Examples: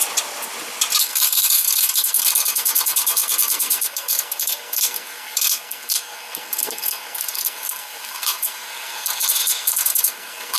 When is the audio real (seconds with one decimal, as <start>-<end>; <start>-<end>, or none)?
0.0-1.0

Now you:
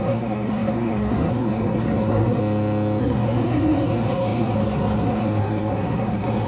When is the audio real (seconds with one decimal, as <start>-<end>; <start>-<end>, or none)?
2.4-3.0

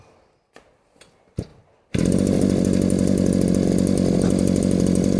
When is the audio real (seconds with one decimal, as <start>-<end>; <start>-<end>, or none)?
0.0-5.2

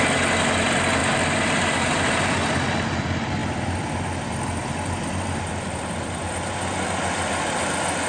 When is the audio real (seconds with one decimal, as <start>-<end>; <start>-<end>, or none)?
0.0-8.1

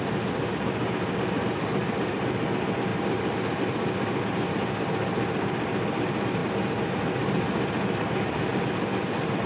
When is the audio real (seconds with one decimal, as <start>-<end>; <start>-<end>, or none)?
0.0-9.5

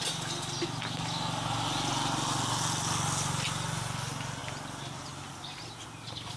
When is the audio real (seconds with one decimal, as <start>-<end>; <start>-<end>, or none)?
0.0-6.4

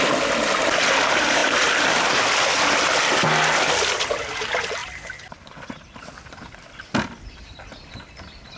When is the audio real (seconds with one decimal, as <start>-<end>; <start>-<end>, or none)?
0.0-8.6

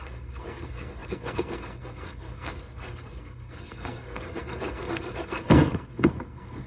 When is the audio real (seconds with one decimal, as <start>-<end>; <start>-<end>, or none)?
none